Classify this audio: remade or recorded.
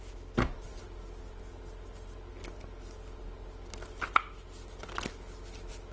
recorded